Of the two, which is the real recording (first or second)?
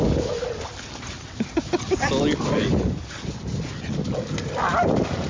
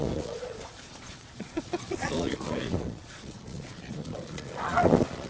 first